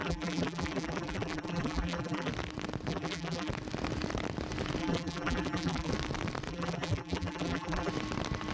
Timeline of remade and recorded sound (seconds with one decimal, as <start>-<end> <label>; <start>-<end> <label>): 0.0-2.3 remade; 2.3-2.9 recorded; 2.9-3.5 remade; 3.5-4.8 recorded; 4.8-5.9 remade; 5.9-6.5 recorded; 6.5-7.9 remade; 7.9-8.5 recorded